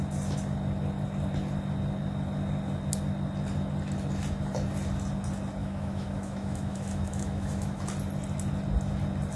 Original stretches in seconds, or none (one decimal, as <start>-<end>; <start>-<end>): 0.0-5.6; 7.8-9.3